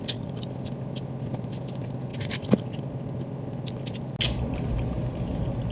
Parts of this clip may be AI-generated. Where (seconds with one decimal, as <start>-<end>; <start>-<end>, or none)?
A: none